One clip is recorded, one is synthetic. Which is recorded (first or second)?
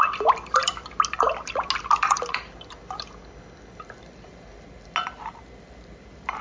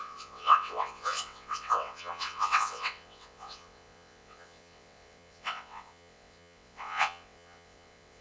first